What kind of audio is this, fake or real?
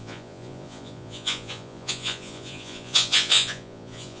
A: fake